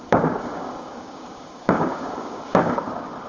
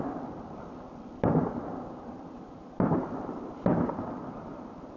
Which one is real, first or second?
second